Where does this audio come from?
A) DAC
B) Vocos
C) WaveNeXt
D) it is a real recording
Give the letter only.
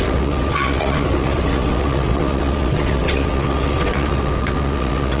C